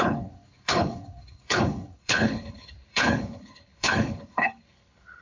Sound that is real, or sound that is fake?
fake